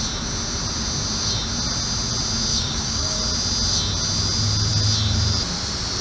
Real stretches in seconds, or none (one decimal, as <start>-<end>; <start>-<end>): 0.0-2.5; 3.2-6.0